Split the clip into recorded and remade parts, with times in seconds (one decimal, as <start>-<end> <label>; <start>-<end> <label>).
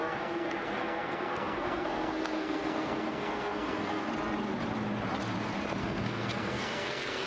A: 0.0-4.1 remade; 4.1-5.8 recorded; 5.8-7.3 remade